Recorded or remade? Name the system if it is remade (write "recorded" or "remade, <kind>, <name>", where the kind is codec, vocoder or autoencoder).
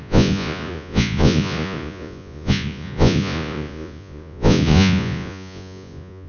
remade, vocoder, Vocos